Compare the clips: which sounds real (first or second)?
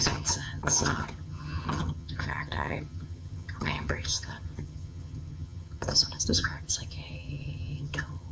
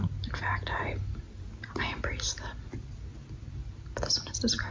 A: second